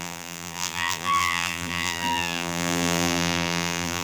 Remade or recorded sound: remade